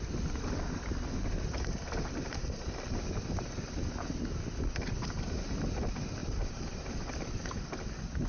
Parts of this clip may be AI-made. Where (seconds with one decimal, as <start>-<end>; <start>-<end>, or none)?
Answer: 6.2-6.8